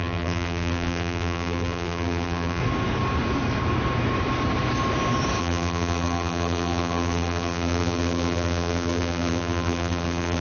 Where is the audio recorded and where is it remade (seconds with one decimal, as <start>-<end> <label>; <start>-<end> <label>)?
0.0-2.6 remade; 2.6-5.4 recorded; 5.4-10.4 remade